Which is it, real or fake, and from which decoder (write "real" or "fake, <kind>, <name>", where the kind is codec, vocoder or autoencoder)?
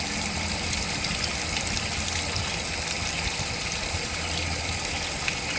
real